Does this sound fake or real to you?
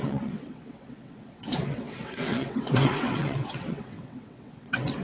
fake